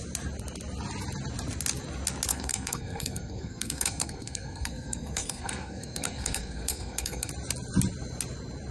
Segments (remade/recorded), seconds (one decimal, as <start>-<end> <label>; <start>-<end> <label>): 0.0-2.3 recorded; 2.3-7.3 remade; 7.3-8.7 recorded